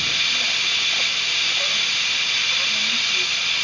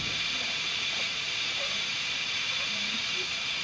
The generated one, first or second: second